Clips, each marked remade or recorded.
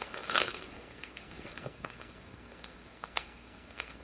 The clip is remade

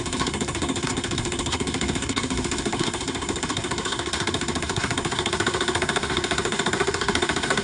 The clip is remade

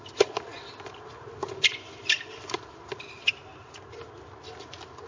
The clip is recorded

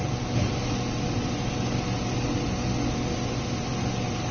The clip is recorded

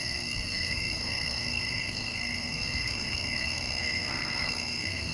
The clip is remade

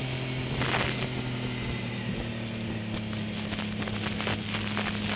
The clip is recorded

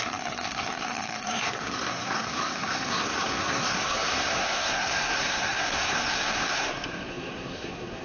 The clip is remade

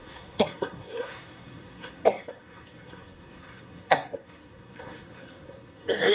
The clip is remade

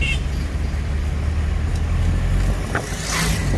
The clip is recorded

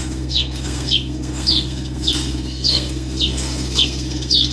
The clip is remade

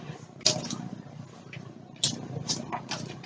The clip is recorded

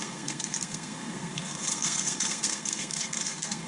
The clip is remade